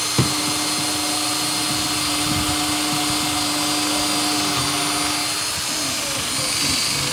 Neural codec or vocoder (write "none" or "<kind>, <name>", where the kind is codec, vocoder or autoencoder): none